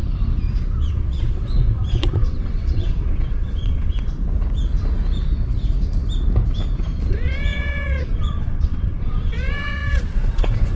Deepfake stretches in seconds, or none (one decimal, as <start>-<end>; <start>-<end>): 0.8-4.1; 7.1-10.8